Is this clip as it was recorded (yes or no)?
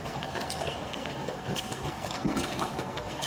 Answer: no